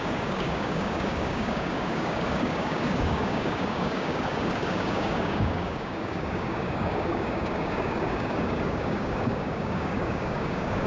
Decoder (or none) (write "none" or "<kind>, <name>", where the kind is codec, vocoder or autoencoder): codec, DAC